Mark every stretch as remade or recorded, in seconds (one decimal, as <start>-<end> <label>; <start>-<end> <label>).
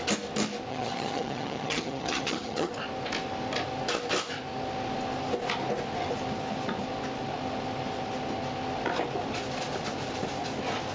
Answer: 0.0-0.7 recorded; 0.7-2.7 remade; 2.7-10.9 recorded